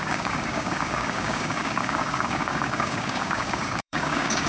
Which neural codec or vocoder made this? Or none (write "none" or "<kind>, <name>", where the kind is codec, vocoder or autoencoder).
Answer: codec, DAC